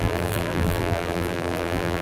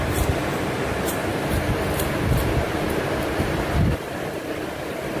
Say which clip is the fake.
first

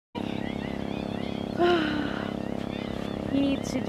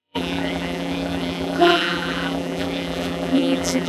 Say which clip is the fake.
second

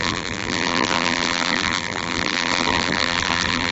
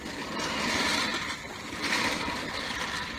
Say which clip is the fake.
first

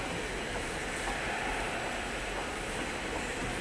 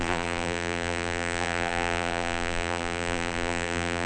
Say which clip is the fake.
second